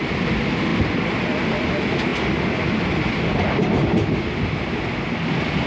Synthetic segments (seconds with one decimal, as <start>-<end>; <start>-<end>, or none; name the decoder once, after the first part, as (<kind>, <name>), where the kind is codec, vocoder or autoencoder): none